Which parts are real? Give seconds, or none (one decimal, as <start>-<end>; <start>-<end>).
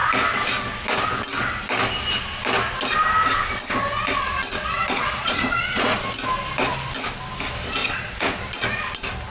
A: 0.0-4.5; 6.0-7.8; 8.4-9.3